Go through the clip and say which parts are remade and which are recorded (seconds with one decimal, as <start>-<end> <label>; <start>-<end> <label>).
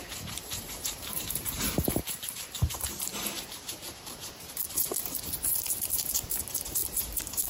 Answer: 0.0-7.5 remade